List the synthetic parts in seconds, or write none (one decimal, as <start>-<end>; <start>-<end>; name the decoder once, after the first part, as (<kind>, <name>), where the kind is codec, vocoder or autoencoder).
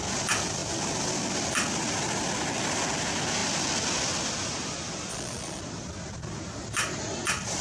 5.1-5.6 (vocoder, Vocos)